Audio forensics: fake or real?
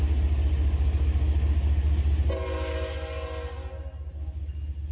real